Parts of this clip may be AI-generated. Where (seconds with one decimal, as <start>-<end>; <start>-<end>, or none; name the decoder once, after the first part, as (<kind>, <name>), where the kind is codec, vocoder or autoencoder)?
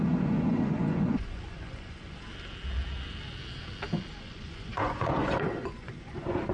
0.0-2.3 (vocoder, Vocos); 4.2-6.5